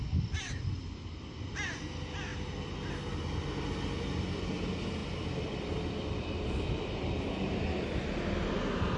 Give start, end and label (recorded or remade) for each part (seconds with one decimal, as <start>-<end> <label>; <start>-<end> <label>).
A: 0.0-9.0 recorded